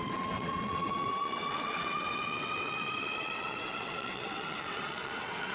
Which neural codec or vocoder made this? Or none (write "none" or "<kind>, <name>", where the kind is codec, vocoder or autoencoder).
vocoder, WaveNeXt